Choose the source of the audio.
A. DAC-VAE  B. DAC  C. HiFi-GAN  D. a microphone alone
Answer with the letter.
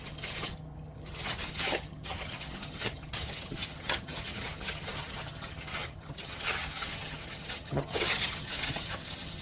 C